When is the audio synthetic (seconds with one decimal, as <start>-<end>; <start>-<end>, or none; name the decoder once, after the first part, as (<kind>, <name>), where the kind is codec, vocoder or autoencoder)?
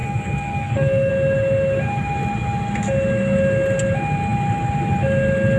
0.0-1.1 (codec, SNAC)